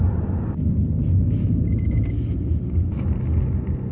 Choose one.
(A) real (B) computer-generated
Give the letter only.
A